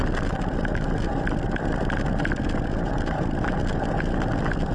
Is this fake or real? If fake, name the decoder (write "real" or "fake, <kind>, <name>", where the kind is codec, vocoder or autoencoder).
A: real